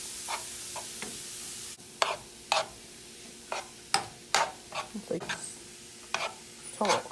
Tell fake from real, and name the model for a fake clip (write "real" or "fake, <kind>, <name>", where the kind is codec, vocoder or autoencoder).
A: real